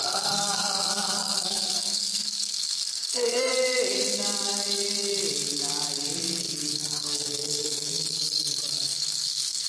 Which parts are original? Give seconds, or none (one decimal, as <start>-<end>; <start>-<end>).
3.5-6.4